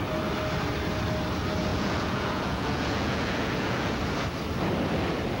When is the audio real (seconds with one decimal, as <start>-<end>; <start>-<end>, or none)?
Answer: 0.0-1.7; 3.9-5.4